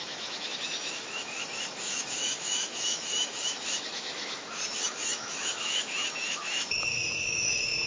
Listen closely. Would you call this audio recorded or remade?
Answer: remade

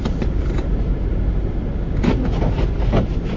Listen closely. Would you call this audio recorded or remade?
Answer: recorded